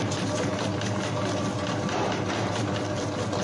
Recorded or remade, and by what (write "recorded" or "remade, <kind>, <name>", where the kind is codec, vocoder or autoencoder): recorded